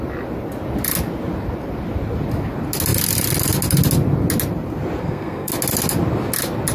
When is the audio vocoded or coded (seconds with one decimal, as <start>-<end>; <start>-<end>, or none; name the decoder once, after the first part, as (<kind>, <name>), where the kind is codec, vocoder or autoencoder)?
5.0-5.5 (codec, SNAC)